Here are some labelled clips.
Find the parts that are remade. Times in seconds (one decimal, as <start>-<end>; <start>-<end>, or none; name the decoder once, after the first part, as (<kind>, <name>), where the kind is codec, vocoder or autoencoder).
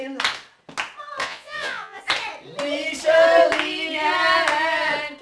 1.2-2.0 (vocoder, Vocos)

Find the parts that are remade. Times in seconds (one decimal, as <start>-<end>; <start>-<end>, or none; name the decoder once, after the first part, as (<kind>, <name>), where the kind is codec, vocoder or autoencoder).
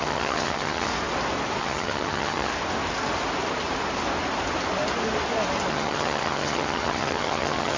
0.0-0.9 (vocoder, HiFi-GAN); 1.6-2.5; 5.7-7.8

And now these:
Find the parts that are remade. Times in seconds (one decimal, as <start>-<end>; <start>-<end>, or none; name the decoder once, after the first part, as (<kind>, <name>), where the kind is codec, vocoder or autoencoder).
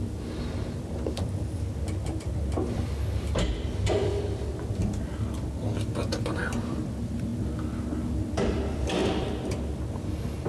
0.0-4.8 (vocoder, BigVGAN v2); 6.2-7.3; 8.0-9.0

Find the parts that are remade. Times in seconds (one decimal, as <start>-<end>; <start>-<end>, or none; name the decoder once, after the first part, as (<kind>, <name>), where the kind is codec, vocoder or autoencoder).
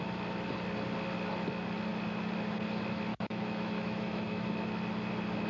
3.1-4.5 (autoencoder, DAC-VAE)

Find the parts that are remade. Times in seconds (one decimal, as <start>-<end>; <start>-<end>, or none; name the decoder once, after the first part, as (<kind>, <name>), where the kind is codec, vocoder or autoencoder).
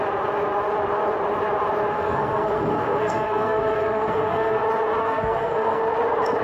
1.9-4.6 (codec, SNAC); 5.0-5.8